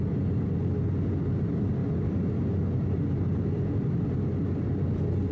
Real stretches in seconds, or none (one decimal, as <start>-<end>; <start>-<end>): 0.0-5.3